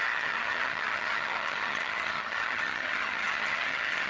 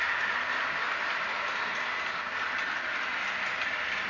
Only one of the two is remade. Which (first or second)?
first